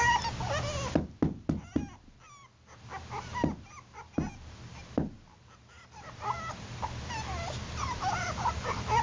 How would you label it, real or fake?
real